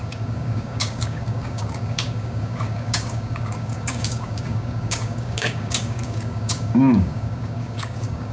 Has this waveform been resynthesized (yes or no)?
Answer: yes